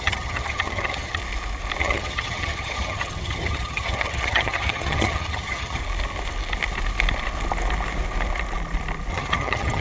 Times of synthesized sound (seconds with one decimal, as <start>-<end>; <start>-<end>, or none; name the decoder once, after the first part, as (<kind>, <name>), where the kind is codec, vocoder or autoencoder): 0.0-1.2 (vocoder, HiFi-GAN); 1.8-5.8; 9.1-9.8